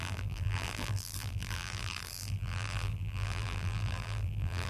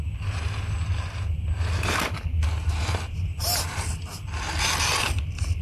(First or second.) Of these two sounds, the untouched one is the second